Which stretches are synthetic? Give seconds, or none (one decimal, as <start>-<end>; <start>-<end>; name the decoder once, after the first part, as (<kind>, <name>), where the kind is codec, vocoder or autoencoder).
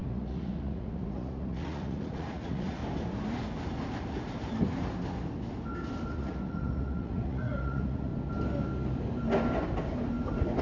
0.0-2.8 (vocoder, Vocos); 6.1-8.1